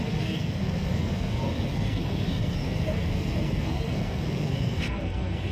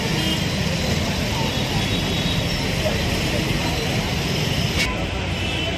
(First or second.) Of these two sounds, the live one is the second